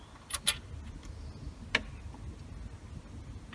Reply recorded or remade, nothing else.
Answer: recorded